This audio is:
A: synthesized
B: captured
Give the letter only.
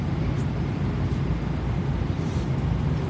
B